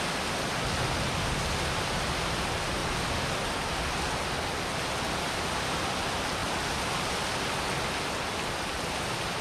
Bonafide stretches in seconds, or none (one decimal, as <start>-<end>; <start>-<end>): 0.0-9.4